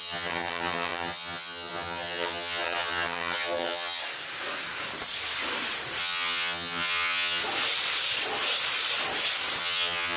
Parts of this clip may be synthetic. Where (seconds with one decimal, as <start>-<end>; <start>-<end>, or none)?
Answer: 0.0-4.0; 6.0-7.4; 9.6-10.2